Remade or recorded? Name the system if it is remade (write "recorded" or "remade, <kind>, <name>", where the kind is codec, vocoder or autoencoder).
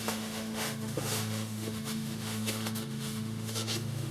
remade, autoencoder, DAC-VAE